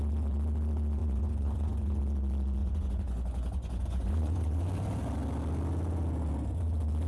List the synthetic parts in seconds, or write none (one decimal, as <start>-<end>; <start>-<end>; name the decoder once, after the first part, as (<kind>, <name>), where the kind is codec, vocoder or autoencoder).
1.0-2.0 (vocoder, Vocos); 2.6-4.6